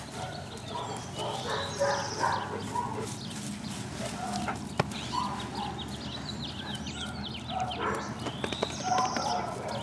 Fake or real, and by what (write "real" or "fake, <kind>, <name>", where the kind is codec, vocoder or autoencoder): real